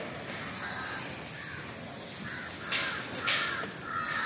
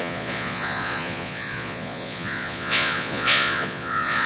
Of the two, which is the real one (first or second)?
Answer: first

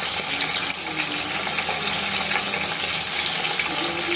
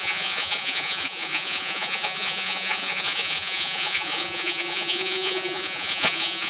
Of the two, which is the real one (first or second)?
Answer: first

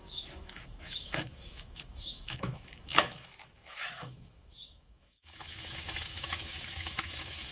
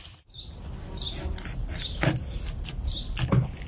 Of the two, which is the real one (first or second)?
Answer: second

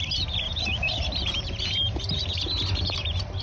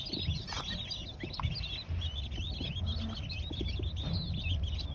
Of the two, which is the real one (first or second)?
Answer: second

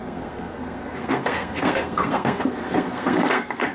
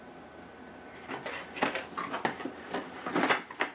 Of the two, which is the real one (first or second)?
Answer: second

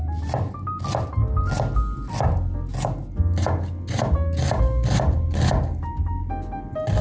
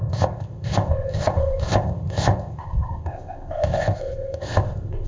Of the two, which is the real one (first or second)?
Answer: first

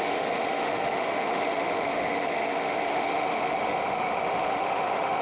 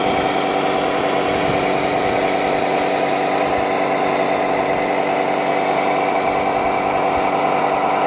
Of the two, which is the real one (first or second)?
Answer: second